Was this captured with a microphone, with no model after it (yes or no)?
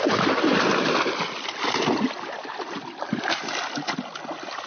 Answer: yes